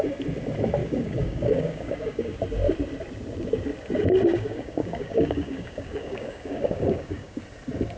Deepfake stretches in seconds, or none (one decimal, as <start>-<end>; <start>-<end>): 0.8-2.4; 4.3-7.4